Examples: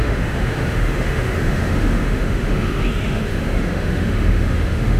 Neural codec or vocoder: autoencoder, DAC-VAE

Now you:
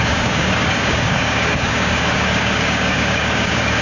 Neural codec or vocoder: codec, DAC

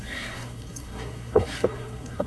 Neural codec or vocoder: codec, SNAC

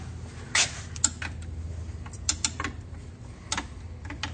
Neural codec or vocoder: none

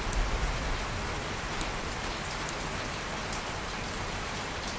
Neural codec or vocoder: none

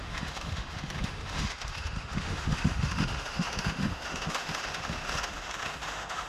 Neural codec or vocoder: autoencoder, DAC-VAE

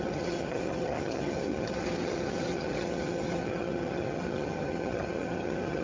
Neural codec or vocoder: vocoder, HiFi-GAN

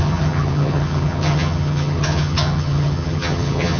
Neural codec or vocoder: vocoder, HiFi-GAN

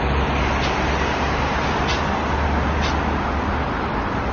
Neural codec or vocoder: none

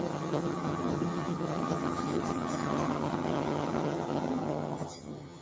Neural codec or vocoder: vocoder, HiFi-GAN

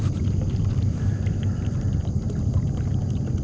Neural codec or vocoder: none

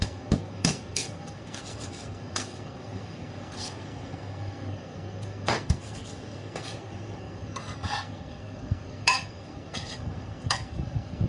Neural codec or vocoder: codec, SNAC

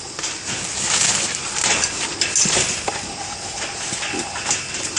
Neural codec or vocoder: none